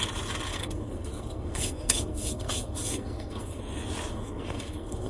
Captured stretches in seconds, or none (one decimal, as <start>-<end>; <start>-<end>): 0.0-0.5; 3.6-4.1